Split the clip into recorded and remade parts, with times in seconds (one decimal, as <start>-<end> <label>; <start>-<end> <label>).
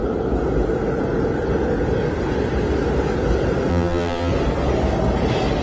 0.0-3.7 recorded; 3.7-4.3 remade; 4.3-5.6 recorded